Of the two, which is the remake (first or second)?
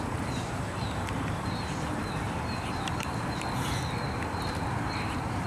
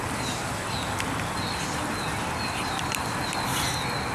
first